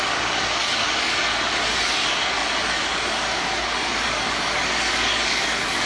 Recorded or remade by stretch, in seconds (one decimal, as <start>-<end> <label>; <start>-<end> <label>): 0.0-5.9 remade